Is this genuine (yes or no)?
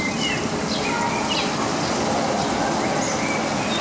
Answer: yes